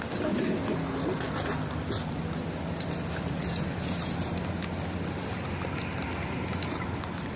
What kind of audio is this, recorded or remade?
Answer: recorded